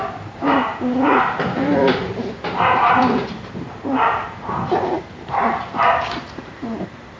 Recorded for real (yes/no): no